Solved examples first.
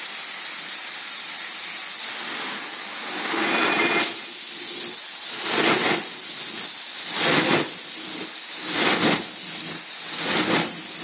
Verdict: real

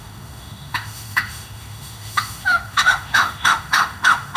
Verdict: fake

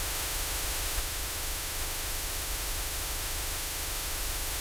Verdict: fake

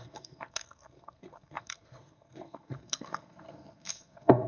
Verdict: fake